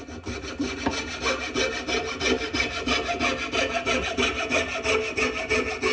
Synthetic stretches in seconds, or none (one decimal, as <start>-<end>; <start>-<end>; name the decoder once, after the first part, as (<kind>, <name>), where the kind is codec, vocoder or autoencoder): none

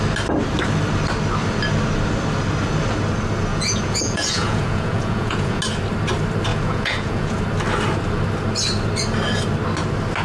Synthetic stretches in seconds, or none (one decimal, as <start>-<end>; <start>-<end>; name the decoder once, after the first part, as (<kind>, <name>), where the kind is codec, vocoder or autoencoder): 3.5-5.6 (vocoder, Vocos); 6.5-7.4

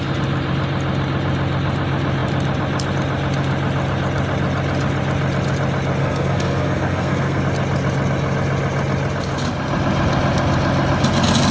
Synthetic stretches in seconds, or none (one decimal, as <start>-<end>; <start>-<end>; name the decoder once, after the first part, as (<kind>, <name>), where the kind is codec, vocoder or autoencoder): 6.0-7.4 (codec, SNAC)

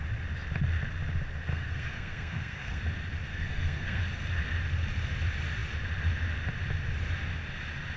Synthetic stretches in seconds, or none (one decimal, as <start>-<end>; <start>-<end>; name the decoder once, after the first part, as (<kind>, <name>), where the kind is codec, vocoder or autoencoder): 1.5-2.8 (codec, SNAC); 3.3-4.0

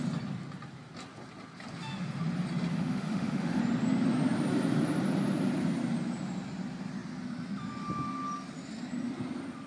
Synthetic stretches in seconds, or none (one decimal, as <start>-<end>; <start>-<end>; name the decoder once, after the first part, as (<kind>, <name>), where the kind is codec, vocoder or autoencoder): 2.7-3.6 (autoencoder, DAC-VAE)

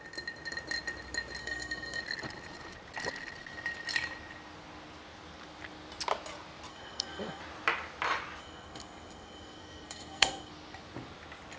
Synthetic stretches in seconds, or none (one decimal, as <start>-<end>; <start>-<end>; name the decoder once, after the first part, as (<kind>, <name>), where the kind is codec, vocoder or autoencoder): 1.4-2.0 (codec, SNAC); 6.7-7.4; 8.4-10.5